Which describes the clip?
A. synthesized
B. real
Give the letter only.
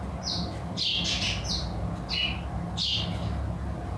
B